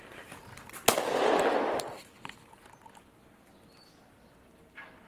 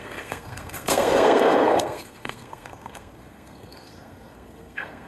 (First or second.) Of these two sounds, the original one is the first